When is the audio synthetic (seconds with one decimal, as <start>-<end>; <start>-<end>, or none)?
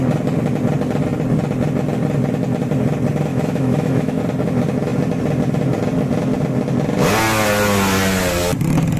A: 3.3-4.2